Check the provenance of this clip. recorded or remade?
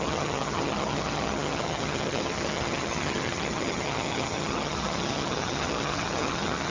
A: remade